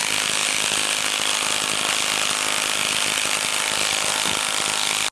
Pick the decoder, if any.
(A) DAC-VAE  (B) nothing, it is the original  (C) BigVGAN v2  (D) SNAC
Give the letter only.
B